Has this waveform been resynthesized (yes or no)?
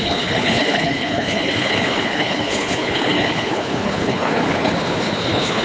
yes